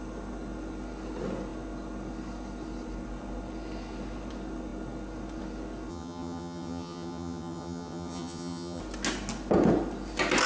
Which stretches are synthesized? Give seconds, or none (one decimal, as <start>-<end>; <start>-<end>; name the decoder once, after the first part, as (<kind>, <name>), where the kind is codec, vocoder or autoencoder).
5.9-8.8 (vocoder, HiFi-GAN)